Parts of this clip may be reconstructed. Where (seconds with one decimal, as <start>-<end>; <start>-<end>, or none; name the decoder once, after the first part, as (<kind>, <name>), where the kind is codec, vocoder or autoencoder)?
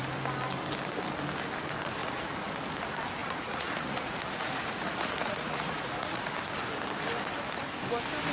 2.0-2.5 (vocoder, Vocos); 3.2-6.3